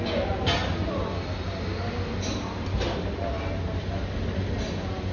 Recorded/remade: recorded